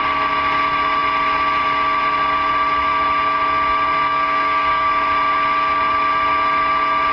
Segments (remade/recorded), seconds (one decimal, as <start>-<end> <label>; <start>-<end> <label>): 0.0-4.0 recorded; 4.0-4.9 remade; 4.9-7.1 recorded